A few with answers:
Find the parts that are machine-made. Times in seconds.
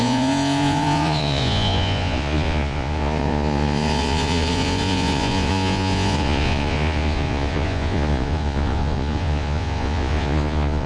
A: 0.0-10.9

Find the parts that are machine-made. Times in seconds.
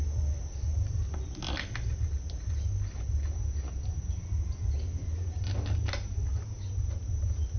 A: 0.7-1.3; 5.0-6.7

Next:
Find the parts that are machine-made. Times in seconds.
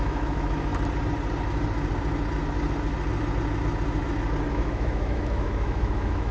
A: 0.0-0.7; 4.5-6.3